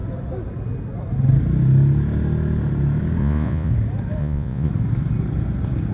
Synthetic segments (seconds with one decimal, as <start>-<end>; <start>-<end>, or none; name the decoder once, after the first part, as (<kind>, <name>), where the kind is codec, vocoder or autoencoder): 3.2-3.7 (vocoder, Vocos); 4.2-4.7